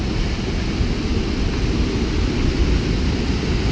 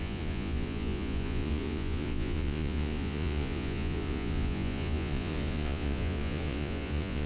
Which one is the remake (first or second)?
second